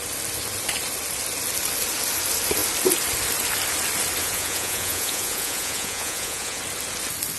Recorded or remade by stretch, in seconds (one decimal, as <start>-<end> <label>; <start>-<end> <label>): 0.0-4.2 recorded; 4.2-6.6 remade; 6.6-7.4 recorded